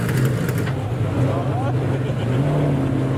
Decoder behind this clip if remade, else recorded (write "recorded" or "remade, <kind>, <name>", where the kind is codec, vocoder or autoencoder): recorded